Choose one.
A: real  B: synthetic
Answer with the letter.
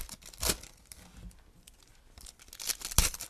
A